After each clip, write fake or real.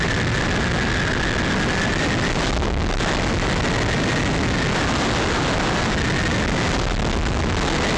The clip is real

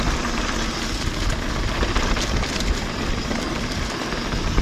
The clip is real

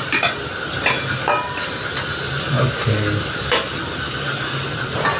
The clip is real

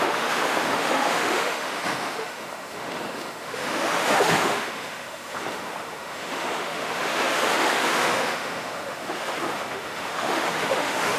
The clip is fake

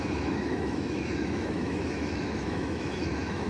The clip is fake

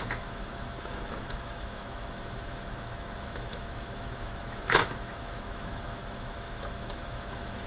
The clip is fake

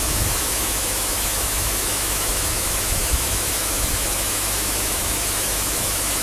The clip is fake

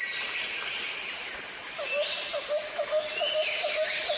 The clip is real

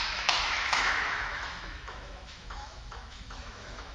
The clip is fake